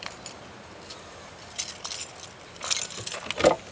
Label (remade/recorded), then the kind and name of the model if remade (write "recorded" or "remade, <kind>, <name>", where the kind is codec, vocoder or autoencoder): recorded